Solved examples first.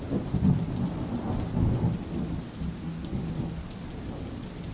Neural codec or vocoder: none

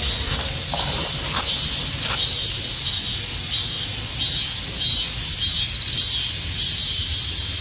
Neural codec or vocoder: none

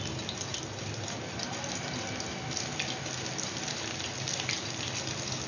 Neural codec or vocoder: none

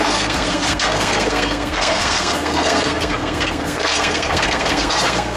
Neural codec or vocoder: codec, SNAC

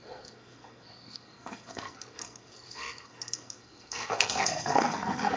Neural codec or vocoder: codec, SNAC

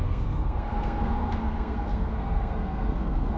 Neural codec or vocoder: codec, SNAC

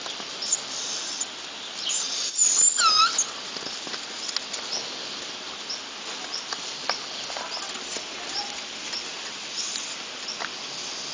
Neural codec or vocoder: none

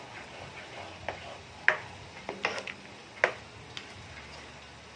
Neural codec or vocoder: none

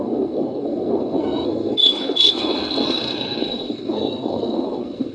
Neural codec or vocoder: codec, SNAC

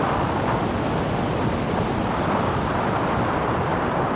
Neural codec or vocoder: none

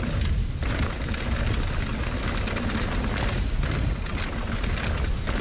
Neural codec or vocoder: none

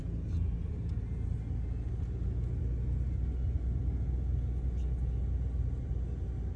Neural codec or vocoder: none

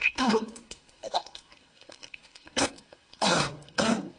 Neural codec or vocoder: codec, SNAC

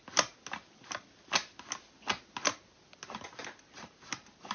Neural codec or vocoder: none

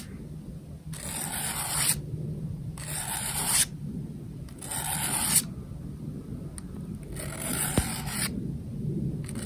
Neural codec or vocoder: none